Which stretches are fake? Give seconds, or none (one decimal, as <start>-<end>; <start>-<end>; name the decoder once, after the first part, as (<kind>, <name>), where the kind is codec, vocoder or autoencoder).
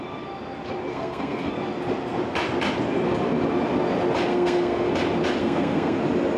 0.9-1.5 (codec, SNAC); 4.3-4.9; 5.4-6.0